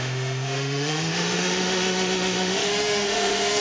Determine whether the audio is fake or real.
fake